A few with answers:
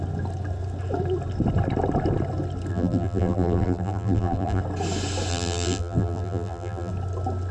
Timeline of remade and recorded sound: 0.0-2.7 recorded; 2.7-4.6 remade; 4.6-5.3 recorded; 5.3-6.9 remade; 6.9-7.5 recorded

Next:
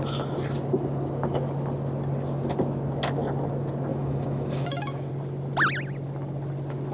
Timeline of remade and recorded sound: 0.0-3.9 recorded; 3.9-5.1 remade; 5.1-6.9 recorded

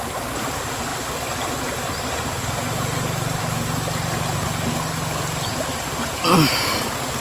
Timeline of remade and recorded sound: 0.0-7.2 recorded

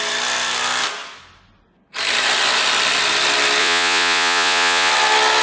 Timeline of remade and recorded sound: 0.0-3.6 recorded; 3.6-4.9 remade; 4.9-5.4 recorded

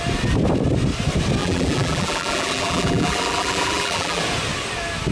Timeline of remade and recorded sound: 0.0-1.4 recorded; 1.4-4.2 remade; 4.2-5.1 recorded

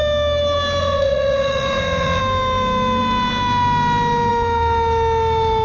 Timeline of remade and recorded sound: 0.0-0.8 recorded; 0.8-2.2 remade; 2.2-5.6 recorded